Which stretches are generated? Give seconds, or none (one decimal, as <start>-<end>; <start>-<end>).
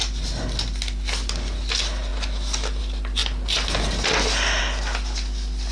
none